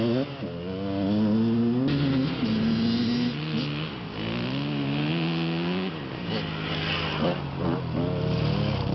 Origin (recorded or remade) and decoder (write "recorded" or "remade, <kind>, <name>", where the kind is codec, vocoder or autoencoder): recorded